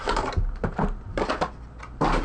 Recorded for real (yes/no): yes